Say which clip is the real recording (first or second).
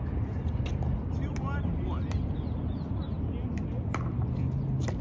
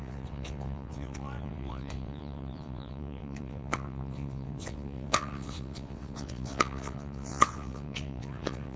first